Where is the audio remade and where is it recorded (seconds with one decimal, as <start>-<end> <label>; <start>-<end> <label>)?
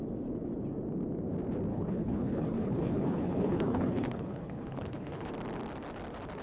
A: 0.0-1.7 recorded; 1.7-5.3 remade; 5.3-6.4 recorded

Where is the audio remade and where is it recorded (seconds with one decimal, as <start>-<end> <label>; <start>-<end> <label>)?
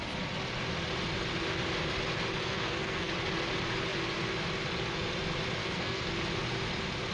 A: 0.0-2.4 recorded; 2.4-3.1 remade; 3.1-5.6 recorded; 5.6-6.1 remade; 6.1-7.1 recorded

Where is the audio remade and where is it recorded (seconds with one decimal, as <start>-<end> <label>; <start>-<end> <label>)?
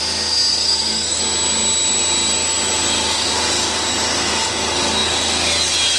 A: 0.0-0.5 recorded; 0.5-1.2 remade; 1.2-6.0 recorded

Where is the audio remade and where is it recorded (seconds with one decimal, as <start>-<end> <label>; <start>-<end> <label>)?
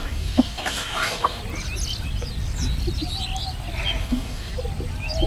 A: 0.0-1.4 remade; 1.4-4.0 recorded; 4.0-4.5 remade; 4.5-5.3 recorded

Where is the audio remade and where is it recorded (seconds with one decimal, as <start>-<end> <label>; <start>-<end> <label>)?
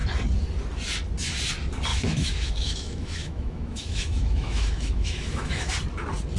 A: 0.0-1.9 recorded; 1.9-5.7 remade; 5.7-6.4 recorded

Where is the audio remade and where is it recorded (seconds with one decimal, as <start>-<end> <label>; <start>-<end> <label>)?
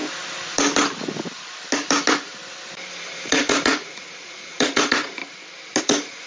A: 0.0-2.9 recorded; 2.9-5.2 remade; 5.2-5.8 recorded; 5.8-6.3 remade